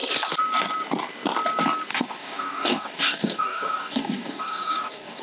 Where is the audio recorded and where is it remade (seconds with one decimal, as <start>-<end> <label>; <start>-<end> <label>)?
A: 0.0-1.9 recorded; 1.9-5.2 remade